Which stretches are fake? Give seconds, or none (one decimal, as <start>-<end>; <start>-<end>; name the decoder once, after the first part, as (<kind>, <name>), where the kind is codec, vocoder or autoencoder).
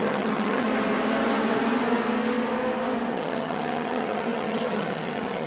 0.0-0.7 (vocoder, HiFi-GAN); 3.1-5.5